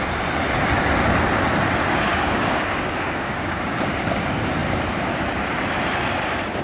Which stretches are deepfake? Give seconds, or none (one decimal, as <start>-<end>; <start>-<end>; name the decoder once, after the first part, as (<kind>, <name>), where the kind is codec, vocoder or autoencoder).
2.1-3.9 (codec, DAC)